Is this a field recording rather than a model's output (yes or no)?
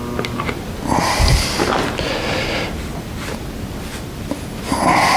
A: yes